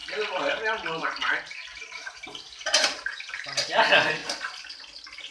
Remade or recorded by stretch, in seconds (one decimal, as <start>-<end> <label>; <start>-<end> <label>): 0.0-3.2 remade; 3.2-5.3 recorded